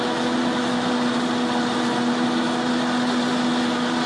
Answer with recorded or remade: recorded